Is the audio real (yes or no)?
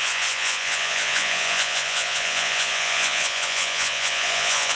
no